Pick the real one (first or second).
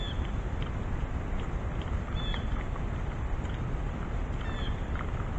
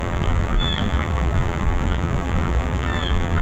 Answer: first